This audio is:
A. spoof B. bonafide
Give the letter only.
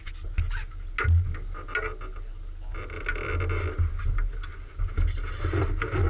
B